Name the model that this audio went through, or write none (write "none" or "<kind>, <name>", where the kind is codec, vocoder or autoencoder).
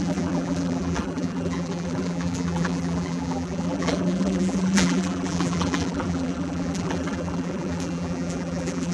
vocoder, BigVGAN v2